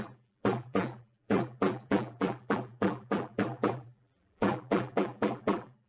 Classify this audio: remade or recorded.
remade